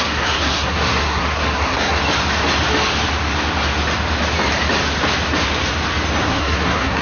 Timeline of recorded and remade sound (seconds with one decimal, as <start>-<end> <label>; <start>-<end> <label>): 0.0-2.0 remade; 2.0-6.2 recorded; 6.2-7.0 remade